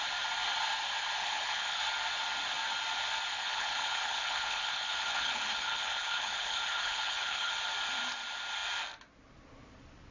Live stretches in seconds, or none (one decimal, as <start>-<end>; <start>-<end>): 0.0-1.2; 1.8-3.3; 7.5-10.1